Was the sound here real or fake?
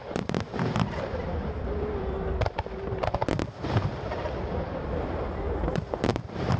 fake